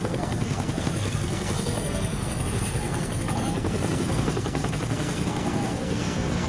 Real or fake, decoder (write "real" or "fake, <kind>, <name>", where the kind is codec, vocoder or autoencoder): fake, codec, SNAC